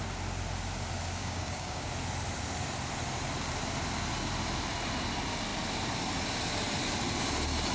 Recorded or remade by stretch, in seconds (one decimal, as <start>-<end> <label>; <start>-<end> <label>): 0.0-1.2 recorded; 1.2-1.9 remade; 1.9-7.7 recorded